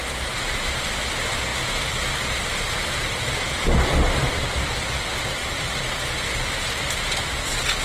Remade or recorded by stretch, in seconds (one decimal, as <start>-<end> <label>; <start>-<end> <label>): 0.0-5.4 recorded; 5.4-6.3 remade; 6.3-7.8 recorded